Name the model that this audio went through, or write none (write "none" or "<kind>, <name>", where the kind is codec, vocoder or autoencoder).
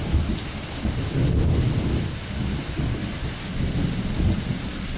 none